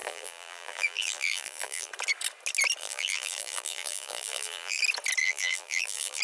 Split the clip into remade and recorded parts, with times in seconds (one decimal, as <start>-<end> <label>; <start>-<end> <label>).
0.0-1.9 remade; 1.9-2.8 recorded; 2.8-4.8 remade; 4.8-5.2 recorded; 5.2-6.2 remade